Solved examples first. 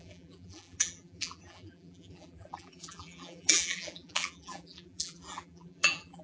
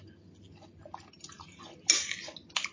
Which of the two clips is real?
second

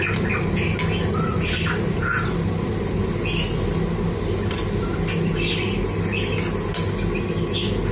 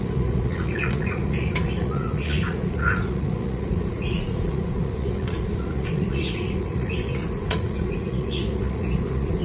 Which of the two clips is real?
first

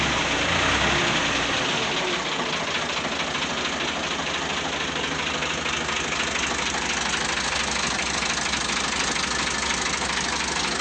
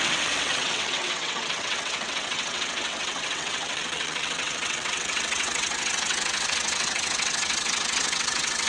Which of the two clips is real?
first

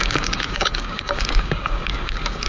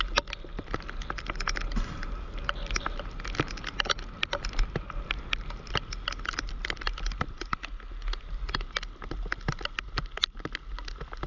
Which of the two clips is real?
second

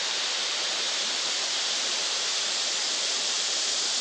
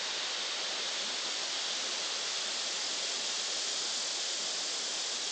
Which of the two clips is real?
second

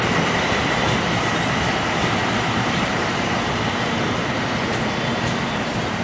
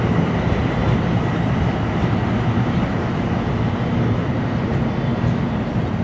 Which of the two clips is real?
second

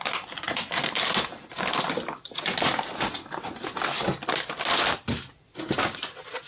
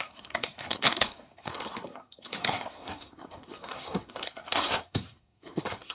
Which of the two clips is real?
first